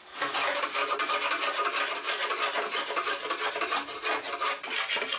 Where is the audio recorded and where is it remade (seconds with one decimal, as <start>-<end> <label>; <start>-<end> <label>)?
0.0-5.2 recorded